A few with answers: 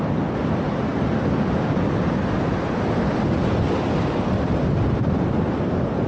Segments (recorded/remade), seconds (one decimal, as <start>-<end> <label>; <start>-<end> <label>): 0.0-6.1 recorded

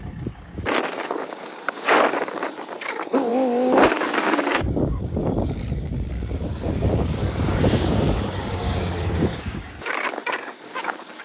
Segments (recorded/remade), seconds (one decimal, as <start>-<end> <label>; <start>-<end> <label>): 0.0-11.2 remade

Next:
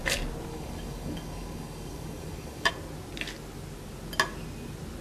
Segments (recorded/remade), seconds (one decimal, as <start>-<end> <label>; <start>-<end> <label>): 0.0-0.5 recorded; 0.5-2.7 remade; 2.7-5.0 recorded

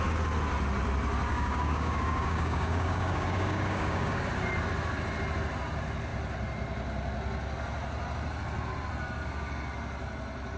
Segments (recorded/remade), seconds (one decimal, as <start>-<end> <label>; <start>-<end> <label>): 0.0-1.3 recorded; 1.3-4.2 remade; 4.2-10.6 recorded

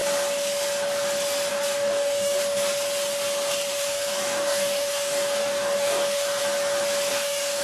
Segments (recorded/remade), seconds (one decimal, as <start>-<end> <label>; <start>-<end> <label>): 0.0-1.5 recorded; 1.5-2.4 remade; 2.4-3.7 recorded; 3.7-6.4 remade; 6.4-7.1 recorded; 7.1-7.6 remade